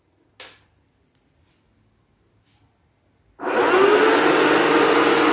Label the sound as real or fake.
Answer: real